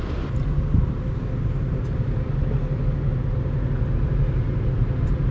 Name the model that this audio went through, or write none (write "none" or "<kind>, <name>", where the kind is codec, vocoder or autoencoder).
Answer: none